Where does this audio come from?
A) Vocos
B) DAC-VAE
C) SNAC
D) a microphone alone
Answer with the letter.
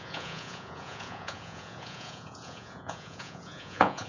A